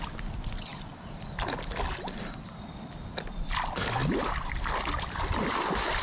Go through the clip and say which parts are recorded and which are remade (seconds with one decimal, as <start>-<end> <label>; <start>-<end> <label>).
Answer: 0.0-4.0 recorded; 4.0-4.8 remade; 4.8-6.0 recorded